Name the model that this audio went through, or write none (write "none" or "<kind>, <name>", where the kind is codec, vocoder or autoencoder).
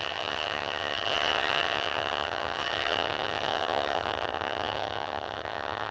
vocoder, HiFi-GAN